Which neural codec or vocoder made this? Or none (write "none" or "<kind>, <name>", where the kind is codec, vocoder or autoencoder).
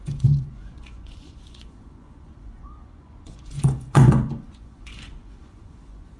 vocoder, Vocos